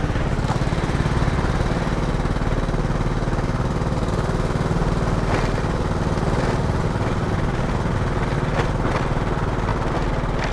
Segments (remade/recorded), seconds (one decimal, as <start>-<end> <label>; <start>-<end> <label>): 0.0-10.5 recorded